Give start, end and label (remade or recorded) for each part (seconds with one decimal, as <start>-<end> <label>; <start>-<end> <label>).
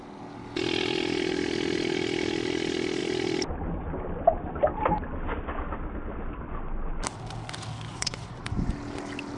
0.0-7.9 recorded; 7.9-8.7 remade; 8.7-9.4 recorded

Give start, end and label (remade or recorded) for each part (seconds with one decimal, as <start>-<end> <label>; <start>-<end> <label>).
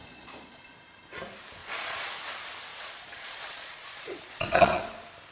0.0-0.6 remade; 0.6-1.6 recorded; 1.6-2.1 remade; 2.1-2.7 recorded; 2.7-4.8 remade; 4.8-5.3 recorded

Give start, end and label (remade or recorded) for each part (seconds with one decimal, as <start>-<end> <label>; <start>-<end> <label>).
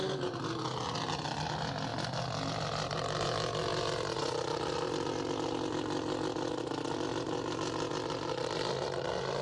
0.0-9.4 recorded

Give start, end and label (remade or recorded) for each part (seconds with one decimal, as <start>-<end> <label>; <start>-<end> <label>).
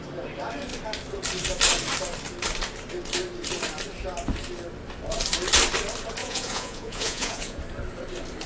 0.0-6.2 recorded; 6.2-7.6 remade; 7.6-8.5 recorded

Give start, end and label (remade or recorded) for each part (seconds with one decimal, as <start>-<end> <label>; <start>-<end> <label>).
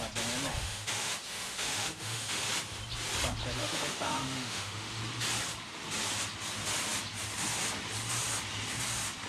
0.0-0.5 recorded; 0.5-2.5 remade; 2.5-3.6 recorded; 3.6-5.0 remade; 5.0-9.3 recorded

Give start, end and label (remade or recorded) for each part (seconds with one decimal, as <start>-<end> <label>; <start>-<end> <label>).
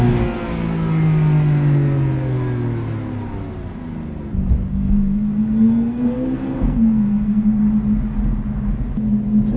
0.0-4.7 recorded; 4.7-7.6 remade; 7.6-9.6 recorded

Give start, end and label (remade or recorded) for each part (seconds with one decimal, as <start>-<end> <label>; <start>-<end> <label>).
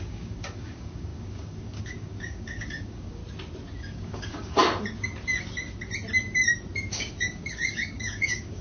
0.0-3.2 remade; 3.2-3.8 recorded; 3.8-4.6 remade; 4.6-6.9 recorded; 6.9-8.6 remade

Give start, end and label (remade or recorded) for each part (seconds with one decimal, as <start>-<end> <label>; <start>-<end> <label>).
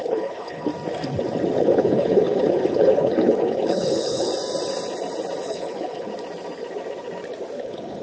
0.0-0.7 remade; 0.7-1.6 recorded; 1.6-4.3 remade; 4.3-5.4 recorded; 5.4-6.1 remade; 6.1-7.6 recorded; 7.6-8.0 remade